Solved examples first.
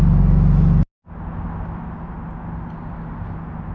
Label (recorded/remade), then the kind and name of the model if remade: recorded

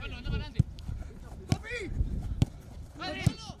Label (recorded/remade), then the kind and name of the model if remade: remade, vocoder, BigVGAN v2